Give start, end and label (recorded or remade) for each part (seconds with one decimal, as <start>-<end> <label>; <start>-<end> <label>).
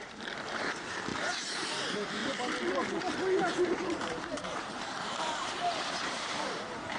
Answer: 0.0-2.2 remade; 2.2-3.0 recorded; 3.0-7.0 remade